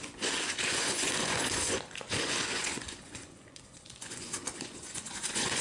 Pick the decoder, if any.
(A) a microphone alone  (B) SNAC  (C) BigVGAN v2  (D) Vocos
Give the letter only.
D